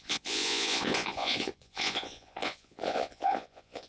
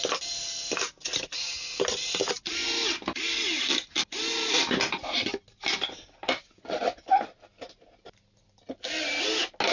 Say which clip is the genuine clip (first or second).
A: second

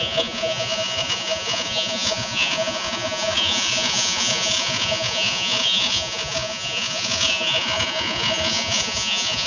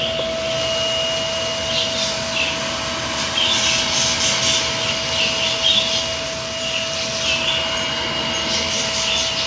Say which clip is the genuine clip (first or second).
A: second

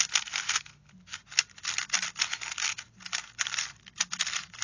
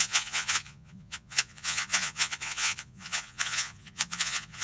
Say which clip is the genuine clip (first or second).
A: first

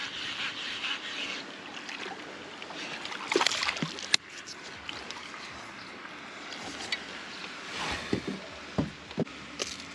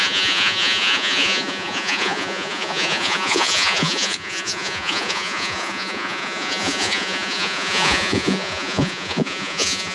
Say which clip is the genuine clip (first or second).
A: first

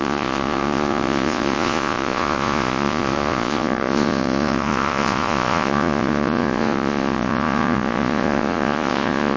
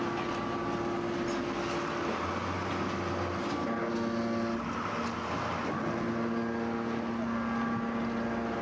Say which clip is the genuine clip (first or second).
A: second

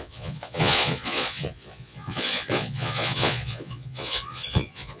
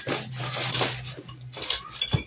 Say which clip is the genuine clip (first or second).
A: second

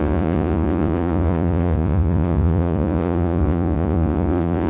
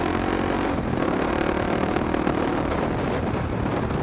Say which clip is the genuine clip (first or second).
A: second